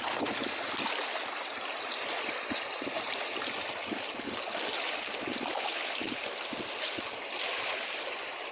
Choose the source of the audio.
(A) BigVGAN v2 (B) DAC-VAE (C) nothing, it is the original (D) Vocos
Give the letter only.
C